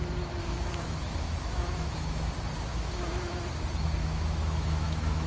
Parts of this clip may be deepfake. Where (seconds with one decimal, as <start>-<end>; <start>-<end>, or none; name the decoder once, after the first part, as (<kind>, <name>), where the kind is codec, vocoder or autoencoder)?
0.4-2.3 (autoencoder, DAC-VAE); 2.7-3.4; 4.0-5.3